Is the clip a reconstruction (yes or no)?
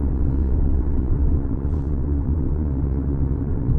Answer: yes